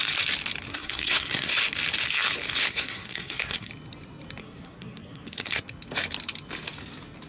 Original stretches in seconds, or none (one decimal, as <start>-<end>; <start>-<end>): 0.0-0.7; 1.5-2.6; 3.7-4.4; 5.6-7.3